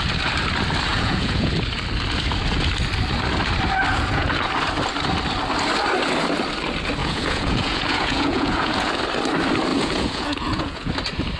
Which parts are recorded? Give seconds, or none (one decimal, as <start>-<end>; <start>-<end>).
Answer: 0.0-0.9; 1.5-3.9; 4.5-7.0; 9.0-9.7; 10.9-11.4